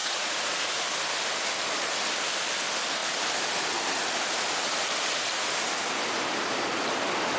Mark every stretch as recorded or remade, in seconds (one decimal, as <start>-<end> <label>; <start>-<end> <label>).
0.0-0.8 remade; 0.8-7.4 recorded